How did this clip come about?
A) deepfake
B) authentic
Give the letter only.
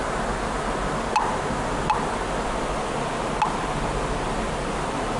B